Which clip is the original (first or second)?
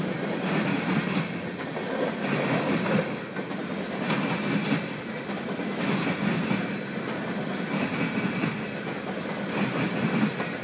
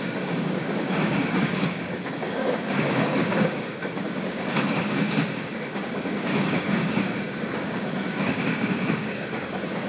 first